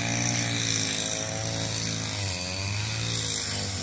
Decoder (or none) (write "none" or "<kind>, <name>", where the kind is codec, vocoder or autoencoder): none